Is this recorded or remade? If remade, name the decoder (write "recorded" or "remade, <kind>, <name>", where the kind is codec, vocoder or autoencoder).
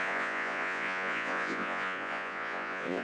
remade, vocoder, Vocos